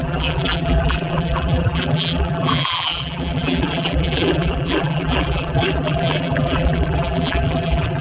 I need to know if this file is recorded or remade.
remade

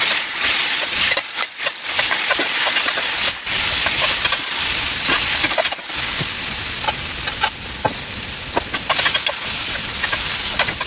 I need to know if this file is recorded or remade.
recorded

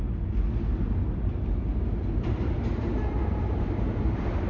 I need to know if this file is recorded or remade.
recorded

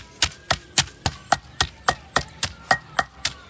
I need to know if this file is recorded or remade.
recorded